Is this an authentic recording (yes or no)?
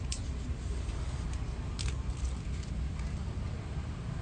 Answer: yes